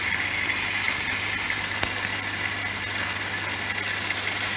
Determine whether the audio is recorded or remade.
recorded